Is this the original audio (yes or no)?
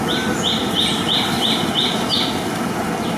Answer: yes